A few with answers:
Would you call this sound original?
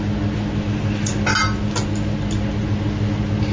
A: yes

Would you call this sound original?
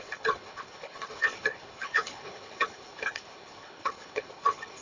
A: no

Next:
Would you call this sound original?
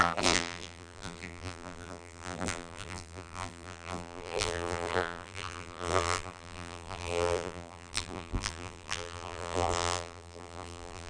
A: no